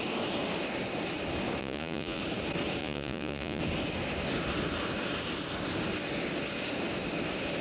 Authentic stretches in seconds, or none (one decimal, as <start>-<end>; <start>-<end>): 0.0-1.6; 2.2-2.8; 3.6-7.6